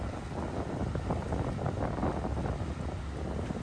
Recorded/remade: recorded